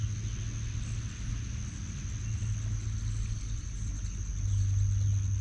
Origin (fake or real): real